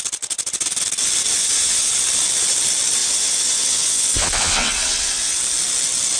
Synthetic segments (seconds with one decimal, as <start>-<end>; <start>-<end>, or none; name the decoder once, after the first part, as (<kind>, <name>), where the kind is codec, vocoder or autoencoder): 1.4-1.9 (vocoder, WaveNeXt); 3.0-5.4